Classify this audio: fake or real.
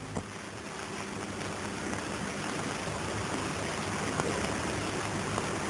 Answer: real